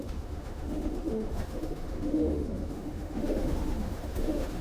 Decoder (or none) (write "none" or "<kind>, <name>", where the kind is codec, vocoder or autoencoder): autoencoder, DAC-VAE